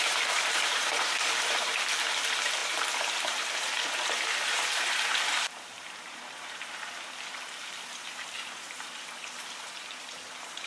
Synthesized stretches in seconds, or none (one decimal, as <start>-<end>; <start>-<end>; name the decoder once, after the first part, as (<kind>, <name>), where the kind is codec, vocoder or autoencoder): 0.0-10.7 (vocoder, BigVGAN v2)